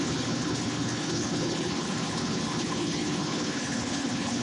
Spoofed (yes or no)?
yes